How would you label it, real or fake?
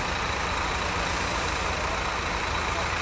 real